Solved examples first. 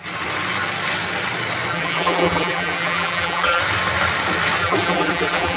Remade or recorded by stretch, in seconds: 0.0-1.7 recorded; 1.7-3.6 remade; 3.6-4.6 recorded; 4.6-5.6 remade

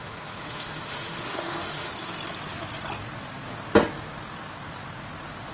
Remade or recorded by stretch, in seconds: 0.0-1.9 remade; 1.9-5.5 recorded

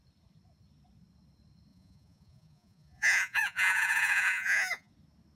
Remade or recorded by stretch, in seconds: 0.0-1.7 recorded; 1.7-4.9 remade; 4.9-5.4 recorded

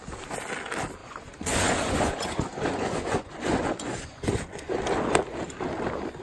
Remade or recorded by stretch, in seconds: 0.0-1.0 recorded; 1.0-4.7 remade; 4.7-6.2 recorded

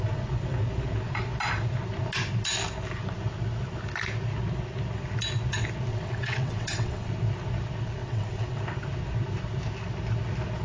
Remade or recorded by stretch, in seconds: 0.0-5.9 recorded; 5.9-7.1 remade; 7.1-8.0 recorded; 8.0-8.6 remade; 8.6-10.6 recorded

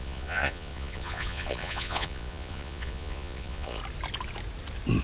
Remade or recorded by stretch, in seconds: 0.0-3.8 remade; 3.8-5.0 recorded

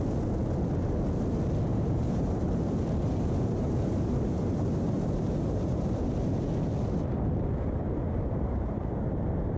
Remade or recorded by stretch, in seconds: 0.0-1.7 recorded; 1.7-5.8 remade; 5.8-8.0 recorded; 8.0-8.8 remade; 8.8-9.6 recorded

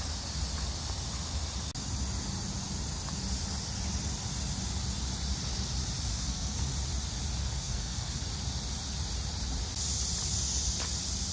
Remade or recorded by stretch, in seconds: 0.0-6.1 recorded; 6.1-6.7 remade; 6.7-7.4 recorded; 7.4-8.2 remade; 8.2-11.3 recorded